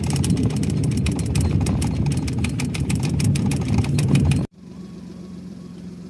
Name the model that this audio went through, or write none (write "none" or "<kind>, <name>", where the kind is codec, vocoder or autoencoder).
vocoder, BigVGAN v2